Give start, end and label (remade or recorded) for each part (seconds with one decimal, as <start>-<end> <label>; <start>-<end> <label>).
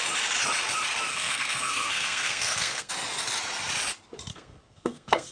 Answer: 0.0-1.1 recorded; 1.1-2.9 remade; 2.9-4.3 recorded; 4.3-5.3 remade